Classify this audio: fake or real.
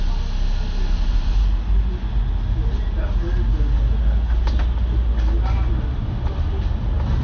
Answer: real